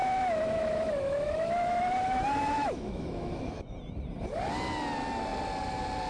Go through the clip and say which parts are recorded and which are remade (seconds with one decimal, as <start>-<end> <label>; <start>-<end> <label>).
0.0-3.7 remade; 3.7-6.1 recorded